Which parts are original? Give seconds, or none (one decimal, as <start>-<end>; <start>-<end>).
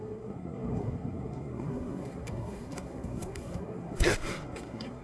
none